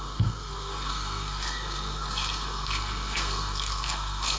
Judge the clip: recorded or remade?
remade